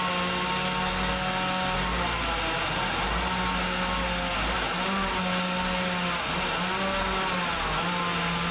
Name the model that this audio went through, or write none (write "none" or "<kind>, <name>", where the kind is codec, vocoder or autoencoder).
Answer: none